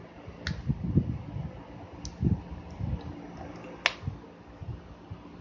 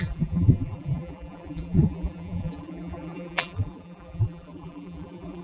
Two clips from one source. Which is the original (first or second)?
first